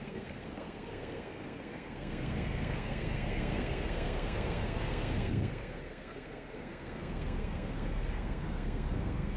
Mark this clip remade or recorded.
remade